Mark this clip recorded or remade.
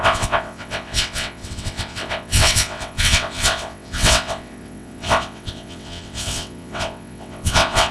remade